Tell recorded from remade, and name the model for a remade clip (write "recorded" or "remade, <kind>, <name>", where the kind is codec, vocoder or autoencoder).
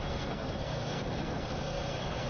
remade, codec, SNAC